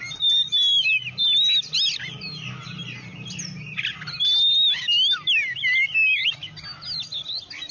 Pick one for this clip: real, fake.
real